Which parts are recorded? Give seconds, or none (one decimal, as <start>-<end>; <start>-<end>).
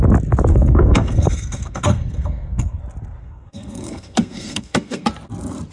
0.0-0.5; 2.8-3.2; 5.1-5.7